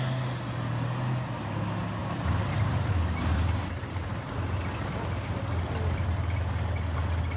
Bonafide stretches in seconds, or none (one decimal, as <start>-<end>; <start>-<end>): 0.0-2.0; 6.4-7.4

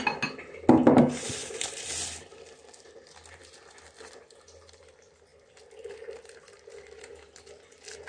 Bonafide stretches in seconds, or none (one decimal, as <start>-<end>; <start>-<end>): 0.0-8.1

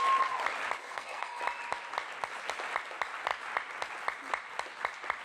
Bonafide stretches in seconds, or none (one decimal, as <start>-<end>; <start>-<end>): 0.0-0.8; 1.4-5.2

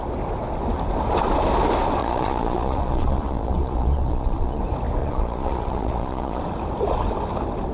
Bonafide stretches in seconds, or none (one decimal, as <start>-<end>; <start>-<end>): 0.0-2.0; 4.6-5.0; 6.4-7.7

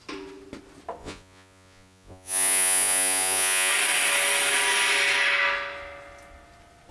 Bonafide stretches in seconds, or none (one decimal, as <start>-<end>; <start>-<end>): 0.0-1.0; 3.7-6.9

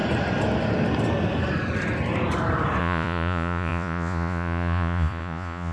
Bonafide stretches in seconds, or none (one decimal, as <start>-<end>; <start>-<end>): 0.0-2.8

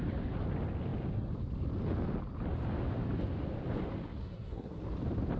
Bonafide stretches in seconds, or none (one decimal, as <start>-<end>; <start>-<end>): 0.0-4.2; 4.8-5.4

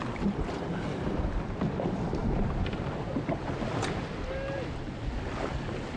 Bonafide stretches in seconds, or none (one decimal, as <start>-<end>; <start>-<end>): 0.0-2.2; 3.1-6.0